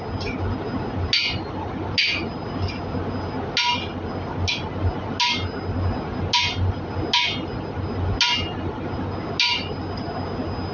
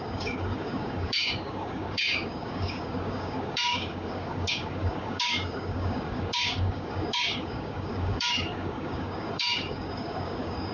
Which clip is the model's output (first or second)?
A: second